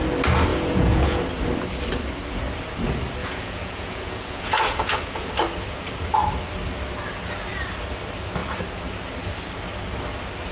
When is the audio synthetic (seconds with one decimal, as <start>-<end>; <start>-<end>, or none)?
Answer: 0.5-1.2; 3.2-5.3